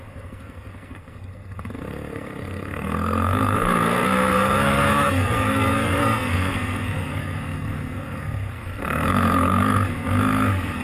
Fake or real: fake